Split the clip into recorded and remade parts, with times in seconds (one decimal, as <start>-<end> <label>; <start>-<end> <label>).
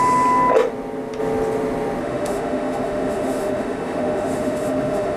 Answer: 0.0-2.0 recorded; 2.0-5.2 remade